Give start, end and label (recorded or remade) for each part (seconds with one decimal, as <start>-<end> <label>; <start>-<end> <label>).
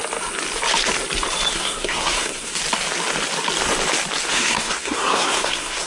0.0-1.5 recorded; 1.5-2.6 remade; 2.6-4.3 recorded; 4.3-5.9 remade